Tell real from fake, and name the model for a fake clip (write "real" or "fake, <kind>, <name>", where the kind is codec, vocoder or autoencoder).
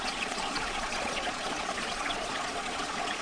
fake, vocoder, Vocos